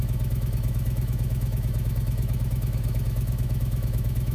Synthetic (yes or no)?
yes